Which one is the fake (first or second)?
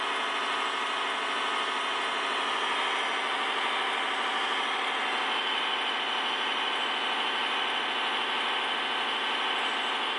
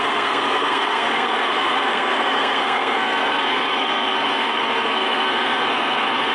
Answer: second